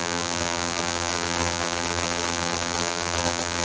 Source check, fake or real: fake